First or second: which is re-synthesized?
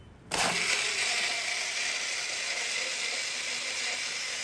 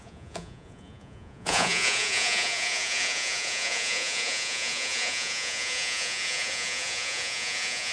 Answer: second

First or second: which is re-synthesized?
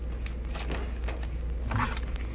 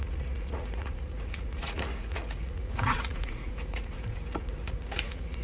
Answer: second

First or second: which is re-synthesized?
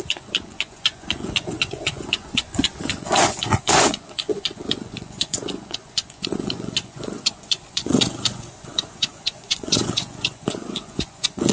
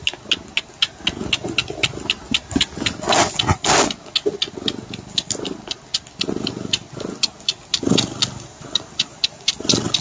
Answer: first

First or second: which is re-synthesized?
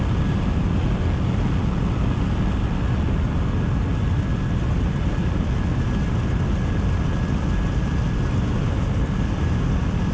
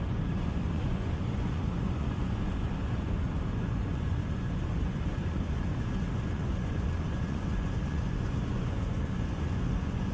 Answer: second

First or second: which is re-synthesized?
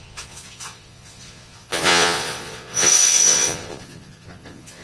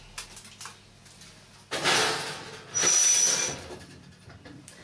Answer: first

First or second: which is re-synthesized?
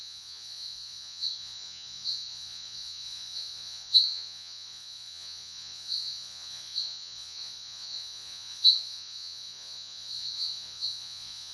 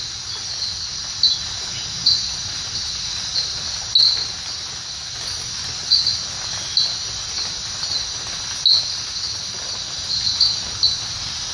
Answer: first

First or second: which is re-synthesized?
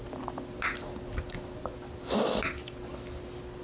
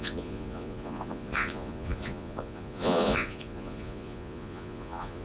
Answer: second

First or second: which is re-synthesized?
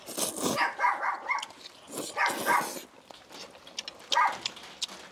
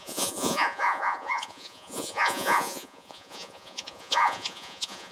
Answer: second